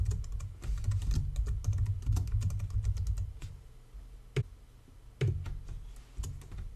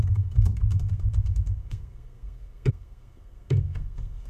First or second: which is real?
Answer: first